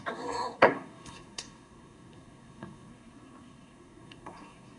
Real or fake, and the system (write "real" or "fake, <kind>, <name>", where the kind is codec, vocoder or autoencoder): fake, codec, SNAC